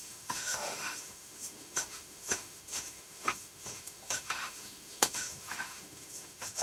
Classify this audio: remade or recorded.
remade